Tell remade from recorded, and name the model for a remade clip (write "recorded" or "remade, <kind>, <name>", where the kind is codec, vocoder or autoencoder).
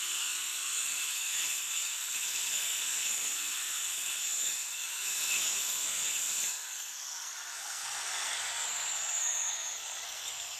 remade, codec, SNAC